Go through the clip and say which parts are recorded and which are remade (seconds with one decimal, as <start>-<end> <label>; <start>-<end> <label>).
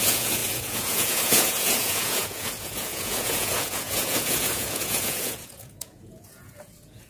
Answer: 0.0-7.1 remade